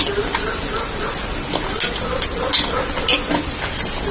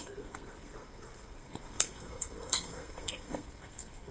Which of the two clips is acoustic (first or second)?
first